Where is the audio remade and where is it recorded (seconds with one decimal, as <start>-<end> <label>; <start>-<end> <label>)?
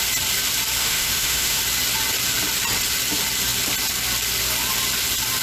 0.0-0.8 recorded; 0.8-1.6 remade; 1.6-5.4 recorded